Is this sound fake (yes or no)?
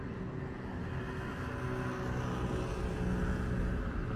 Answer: no